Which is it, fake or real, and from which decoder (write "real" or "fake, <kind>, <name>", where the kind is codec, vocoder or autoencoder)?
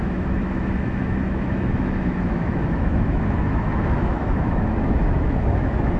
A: fake, autoencoder, DAC-VAE